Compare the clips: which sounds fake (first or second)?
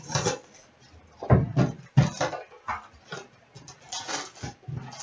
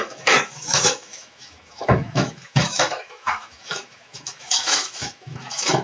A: second